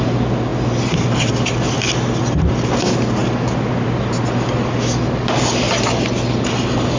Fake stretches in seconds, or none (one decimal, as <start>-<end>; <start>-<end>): none